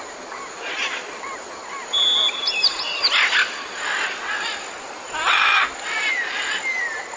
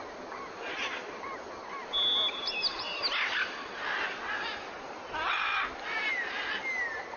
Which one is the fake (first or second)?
first